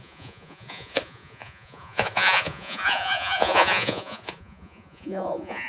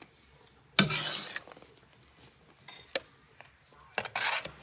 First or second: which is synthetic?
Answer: first